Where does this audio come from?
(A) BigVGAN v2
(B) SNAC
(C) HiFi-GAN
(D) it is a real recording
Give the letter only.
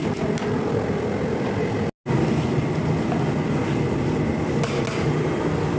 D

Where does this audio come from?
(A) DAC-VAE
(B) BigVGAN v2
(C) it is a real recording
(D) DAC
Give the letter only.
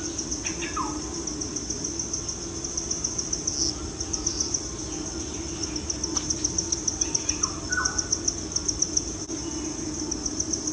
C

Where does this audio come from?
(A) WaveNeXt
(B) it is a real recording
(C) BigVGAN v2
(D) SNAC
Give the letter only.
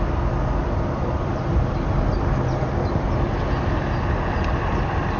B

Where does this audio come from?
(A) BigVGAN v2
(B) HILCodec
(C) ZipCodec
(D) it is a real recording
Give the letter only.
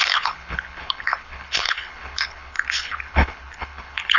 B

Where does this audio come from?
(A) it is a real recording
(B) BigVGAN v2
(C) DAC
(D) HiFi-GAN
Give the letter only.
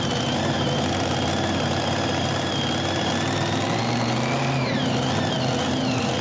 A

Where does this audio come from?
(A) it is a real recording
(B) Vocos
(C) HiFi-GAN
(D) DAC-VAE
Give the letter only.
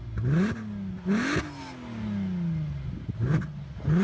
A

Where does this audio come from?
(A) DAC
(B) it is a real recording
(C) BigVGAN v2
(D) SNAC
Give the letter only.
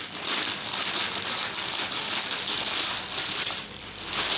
B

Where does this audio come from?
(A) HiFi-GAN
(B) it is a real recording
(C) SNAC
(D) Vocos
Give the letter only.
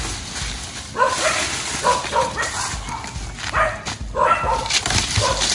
B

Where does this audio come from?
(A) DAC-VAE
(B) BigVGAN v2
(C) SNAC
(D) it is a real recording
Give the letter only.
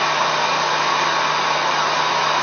D